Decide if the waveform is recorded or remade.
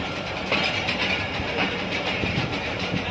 remade